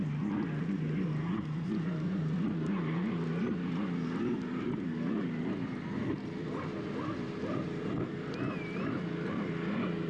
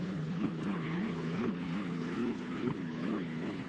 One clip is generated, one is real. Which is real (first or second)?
first